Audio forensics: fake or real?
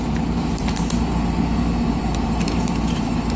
fake